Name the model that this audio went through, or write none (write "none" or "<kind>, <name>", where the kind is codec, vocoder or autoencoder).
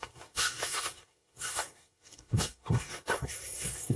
codec, SNAC